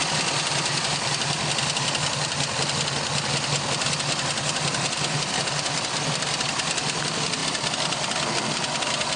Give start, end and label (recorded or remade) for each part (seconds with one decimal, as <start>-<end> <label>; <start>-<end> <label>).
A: 0.0-7.4 recorded; 7.4-8.3 remade; 8.3-9.2 recorded